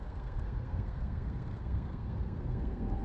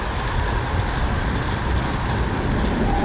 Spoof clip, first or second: first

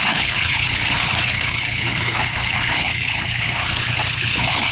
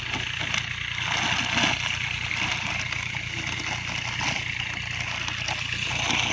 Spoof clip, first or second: first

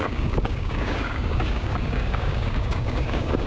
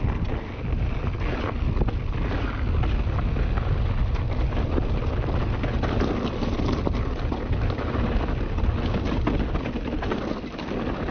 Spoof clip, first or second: first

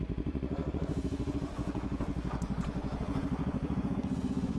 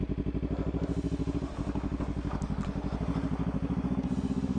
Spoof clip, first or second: first